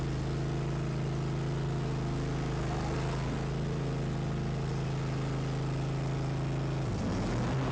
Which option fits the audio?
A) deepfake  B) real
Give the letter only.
B